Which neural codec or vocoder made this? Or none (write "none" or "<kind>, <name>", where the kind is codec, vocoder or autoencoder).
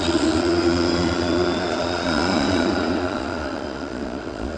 vocoder, Vocos